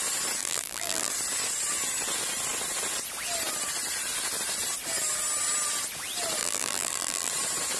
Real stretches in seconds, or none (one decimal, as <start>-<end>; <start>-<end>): 0.0-0.4; 1.1-6.4; 7.3-7.8